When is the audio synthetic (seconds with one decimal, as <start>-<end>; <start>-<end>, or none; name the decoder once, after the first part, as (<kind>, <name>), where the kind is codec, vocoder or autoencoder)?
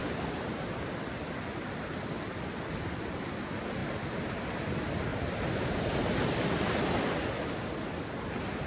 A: 0.0-3.3 (vocoder, BigVGAN v2); 3.8-4.3; 5.1-6.5